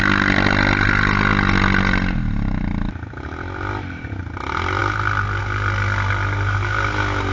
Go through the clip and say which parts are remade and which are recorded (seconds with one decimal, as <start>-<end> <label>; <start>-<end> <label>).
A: 0.0-7.3 recorded